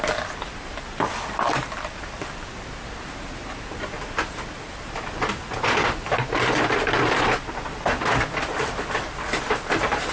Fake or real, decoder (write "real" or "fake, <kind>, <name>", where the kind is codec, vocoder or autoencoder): fake, vocoder, BigVGAN v2